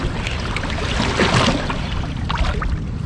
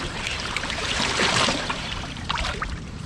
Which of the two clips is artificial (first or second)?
second